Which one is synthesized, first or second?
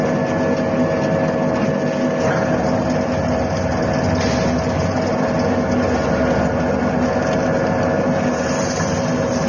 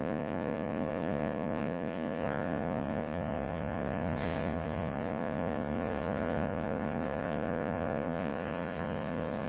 second